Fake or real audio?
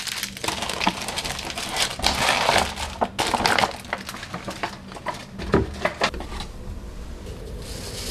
real